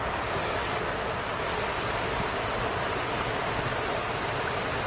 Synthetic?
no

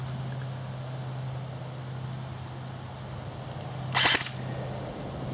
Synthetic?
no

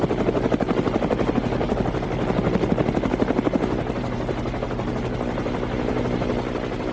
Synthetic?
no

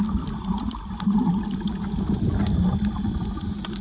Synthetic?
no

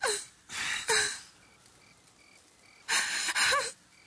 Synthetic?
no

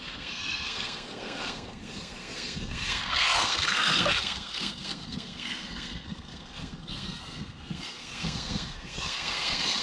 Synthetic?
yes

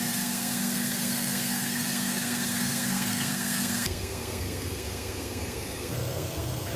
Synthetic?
yes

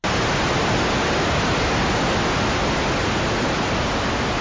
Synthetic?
no